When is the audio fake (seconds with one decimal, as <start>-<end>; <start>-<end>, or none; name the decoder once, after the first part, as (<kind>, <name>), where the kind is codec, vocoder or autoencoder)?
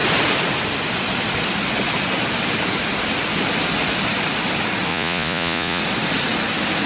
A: 4.9-5.8 (vocoder, Vocos)